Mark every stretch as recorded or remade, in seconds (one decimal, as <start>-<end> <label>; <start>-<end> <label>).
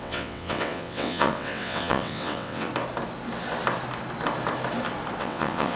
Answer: 0.0-2.7 remade; 2.7-5.2 recorded; 5.2-5.8 remade